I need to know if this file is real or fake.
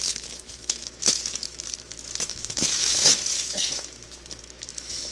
fake